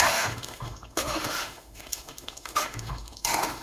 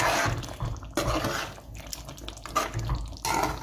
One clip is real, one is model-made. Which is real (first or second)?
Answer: second